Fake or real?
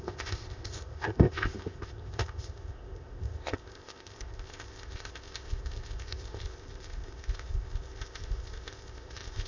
fake